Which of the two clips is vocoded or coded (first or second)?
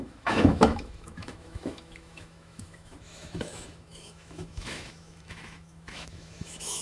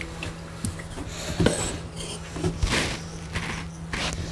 first